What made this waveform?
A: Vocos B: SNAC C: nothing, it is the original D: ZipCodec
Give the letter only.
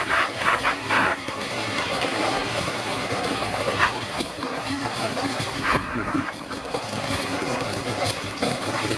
B